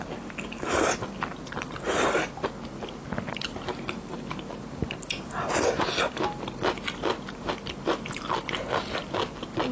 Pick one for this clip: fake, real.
real